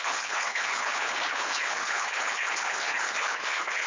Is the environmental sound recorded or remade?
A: remade